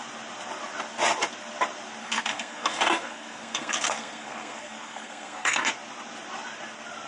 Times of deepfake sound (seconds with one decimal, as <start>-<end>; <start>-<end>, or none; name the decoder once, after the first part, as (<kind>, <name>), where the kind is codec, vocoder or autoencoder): 2.0-5.7 (codec, SNAC)